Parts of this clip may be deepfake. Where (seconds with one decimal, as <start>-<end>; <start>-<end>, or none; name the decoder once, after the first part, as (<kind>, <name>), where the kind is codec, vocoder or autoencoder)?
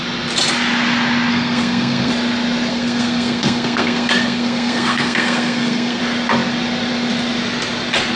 1.3-2.1 (codec, SNAC); 2.7-6.0